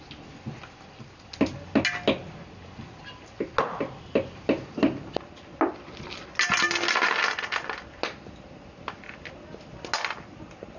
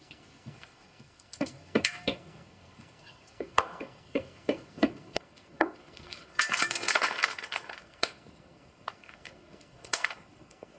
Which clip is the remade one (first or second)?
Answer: second